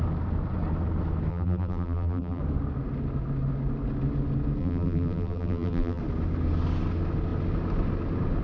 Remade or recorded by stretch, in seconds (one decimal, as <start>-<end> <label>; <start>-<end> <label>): 0.0-1.3 recorded; 1.3-2.4 remade; 2.4-4.6 recorded; 4.6-6.0 remade; 6.0-8.4 recorded